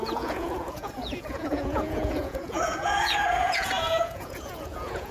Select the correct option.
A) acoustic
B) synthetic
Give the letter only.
B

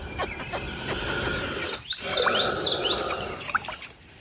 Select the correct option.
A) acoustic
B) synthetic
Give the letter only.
A